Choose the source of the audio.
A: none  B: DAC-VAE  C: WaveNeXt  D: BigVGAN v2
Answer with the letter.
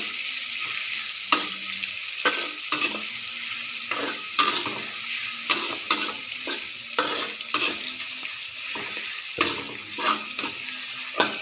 A